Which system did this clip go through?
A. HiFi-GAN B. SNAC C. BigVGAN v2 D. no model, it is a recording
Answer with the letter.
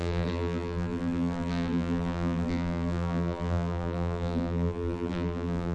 C